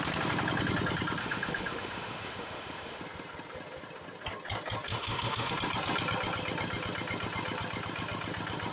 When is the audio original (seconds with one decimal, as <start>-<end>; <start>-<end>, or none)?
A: 0.0-1.2; 3.0-4.9; 5.5-8.7